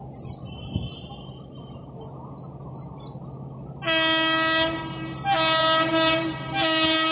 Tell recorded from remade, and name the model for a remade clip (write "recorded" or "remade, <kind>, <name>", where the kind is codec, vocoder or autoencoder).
recorded